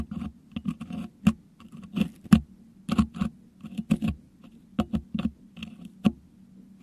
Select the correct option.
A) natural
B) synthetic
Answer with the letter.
A